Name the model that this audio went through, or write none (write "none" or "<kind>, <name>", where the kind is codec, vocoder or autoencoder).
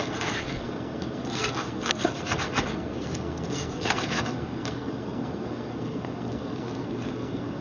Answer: codec, SNAC